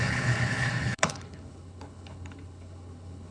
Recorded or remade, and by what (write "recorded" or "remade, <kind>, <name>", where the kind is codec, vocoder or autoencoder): remade, codec, HILCodec